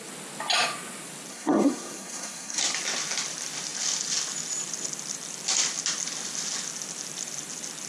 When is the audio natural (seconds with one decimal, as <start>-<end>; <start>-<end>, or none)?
0.0-1.3; 2.6-7.9